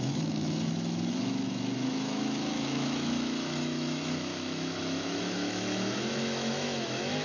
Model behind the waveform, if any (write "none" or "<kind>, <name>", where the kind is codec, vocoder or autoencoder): autoencoder, DAC-VAE